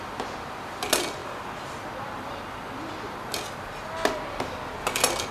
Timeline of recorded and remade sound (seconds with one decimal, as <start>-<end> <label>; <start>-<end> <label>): 0.0-5.3 recorded